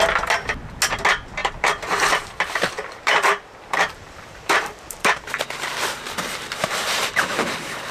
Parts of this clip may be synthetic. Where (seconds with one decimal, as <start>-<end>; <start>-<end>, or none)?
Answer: 1.4-5.4; 6.4-7.5